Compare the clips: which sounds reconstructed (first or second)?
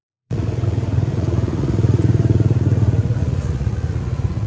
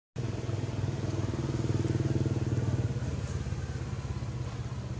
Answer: first